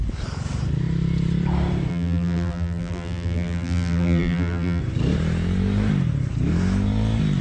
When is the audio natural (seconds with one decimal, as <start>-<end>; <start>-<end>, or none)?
0.0-1.9; 4.8-7.4